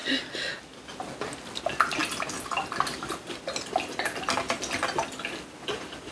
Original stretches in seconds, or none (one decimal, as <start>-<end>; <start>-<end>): 0.0-6.1